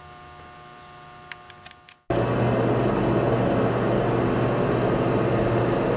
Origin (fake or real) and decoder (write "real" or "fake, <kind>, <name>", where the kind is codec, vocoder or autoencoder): real